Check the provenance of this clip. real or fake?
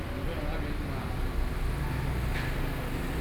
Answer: real